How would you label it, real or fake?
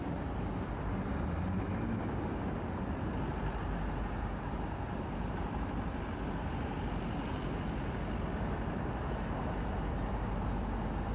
real